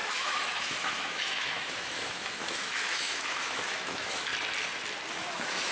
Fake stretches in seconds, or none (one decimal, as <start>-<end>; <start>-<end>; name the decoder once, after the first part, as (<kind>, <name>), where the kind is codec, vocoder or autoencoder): 0.0-4.3 (autoencoder, DAC-VAE); 5.1-5.7